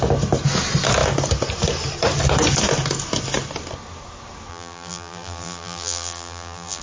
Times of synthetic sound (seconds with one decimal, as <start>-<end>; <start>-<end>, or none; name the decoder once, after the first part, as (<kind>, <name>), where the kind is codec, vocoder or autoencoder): 4.5-6.8 (vocoder, BigVGAN v2)